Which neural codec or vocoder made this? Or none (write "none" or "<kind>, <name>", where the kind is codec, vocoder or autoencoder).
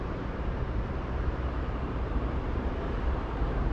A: vocoder, BigVGAN v2